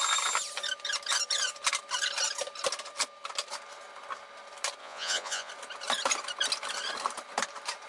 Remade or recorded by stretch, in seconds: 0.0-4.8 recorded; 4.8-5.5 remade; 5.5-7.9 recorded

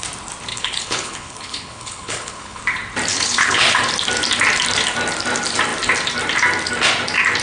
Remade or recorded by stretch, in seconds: 0.0-0.5 recorded; 0.5-2.6 remade; 2.6-3.1 recorded; 3.1-3.8 remade; 3.8-7.4 recorded

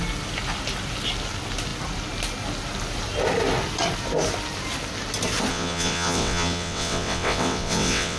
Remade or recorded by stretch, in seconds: 0.0-5.5 recorded; 5.5-8.2 remade

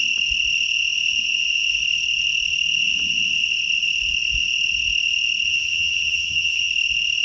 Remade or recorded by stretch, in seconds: 0.0-5.5 recorded; 5.5-6.7 remade; 6.7-7.2 recorded

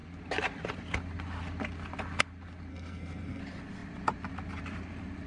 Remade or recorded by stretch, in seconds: 0.0-2.7 recorded; 2.7-3.4 remade; 3.4-5.3 recorded

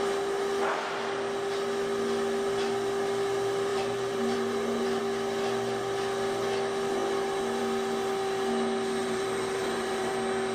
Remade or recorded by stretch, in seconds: 0.0-3.7 recorded; 3.7-5.0 remade; 5.0-9.0 recorded; 9.0-10.1 remade; 10.1-10.5 recorded